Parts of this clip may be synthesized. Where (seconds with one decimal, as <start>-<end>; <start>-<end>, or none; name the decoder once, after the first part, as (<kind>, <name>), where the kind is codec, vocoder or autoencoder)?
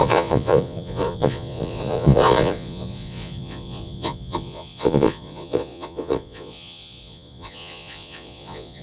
0.0-8.8 (vocoder, Vocos)